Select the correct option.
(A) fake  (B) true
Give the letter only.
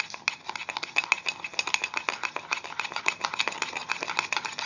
B